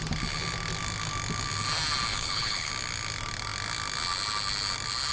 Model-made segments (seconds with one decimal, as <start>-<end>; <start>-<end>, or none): 2.1-2.7